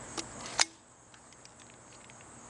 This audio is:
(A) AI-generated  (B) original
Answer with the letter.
B